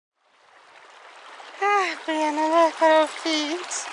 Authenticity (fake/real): real